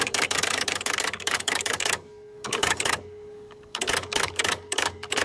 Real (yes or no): no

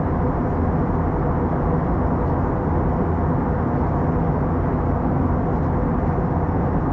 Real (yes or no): yes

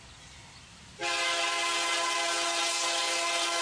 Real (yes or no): yes